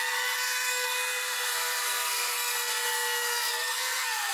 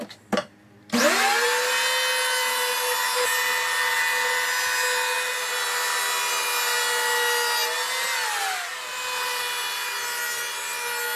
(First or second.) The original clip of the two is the second